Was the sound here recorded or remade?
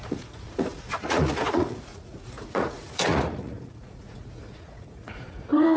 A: remade